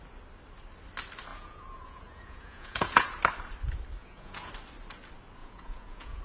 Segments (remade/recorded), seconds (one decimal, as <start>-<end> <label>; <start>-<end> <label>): 0.0-1.3 recorded; 1.3-3.1 remade; 3.1-4.0 recorded; 4.0-4.5 remade; 4.5-5.4 recorded; 5.4-6.2 remade